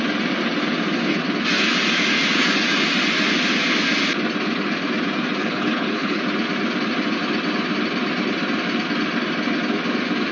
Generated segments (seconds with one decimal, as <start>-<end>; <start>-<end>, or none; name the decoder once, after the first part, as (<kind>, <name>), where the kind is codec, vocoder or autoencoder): 5.4-6.2 (codec, HILCodec)

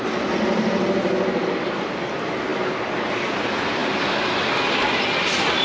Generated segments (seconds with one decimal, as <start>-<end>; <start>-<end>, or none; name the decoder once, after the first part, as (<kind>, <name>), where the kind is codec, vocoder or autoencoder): none